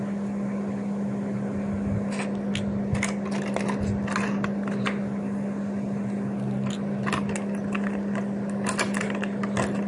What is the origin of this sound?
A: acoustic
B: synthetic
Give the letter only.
A